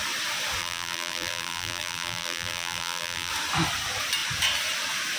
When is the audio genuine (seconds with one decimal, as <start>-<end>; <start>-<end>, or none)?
0.0-0.6; 3.3-5.2